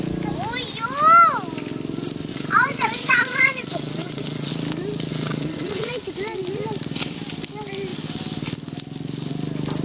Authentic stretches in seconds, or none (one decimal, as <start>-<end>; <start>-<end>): 0.0-2.3; 4.5-5.1; 5.9-9.8